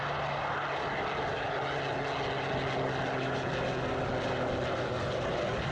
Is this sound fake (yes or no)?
no